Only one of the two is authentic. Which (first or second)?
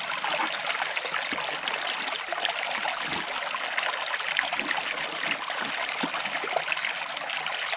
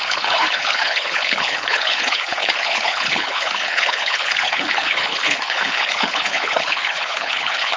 first